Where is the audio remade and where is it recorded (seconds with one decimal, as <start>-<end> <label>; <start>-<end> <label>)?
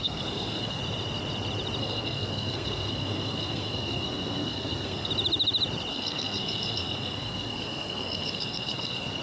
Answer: 0.0-0.8 remade; 0.8-1.8 recorded; 1.8-5.1 remade; 5.1-5.9 recorded; 5.9-9.2 remade